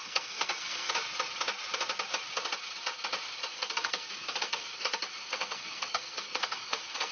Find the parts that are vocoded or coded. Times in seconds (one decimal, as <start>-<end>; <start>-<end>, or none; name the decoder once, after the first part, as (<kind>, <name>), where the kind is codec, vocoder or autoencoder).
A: 0.0-0.9 (codec, SNAC); 3.5-7.1